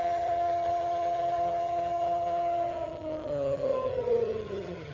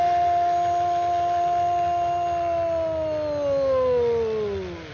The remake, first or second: first